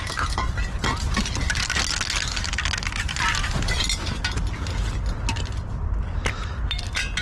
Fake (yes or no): no